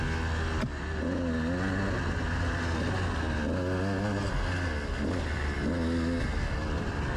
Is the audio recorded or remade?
recorded